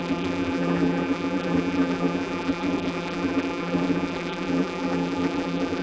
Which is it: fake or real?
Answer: fake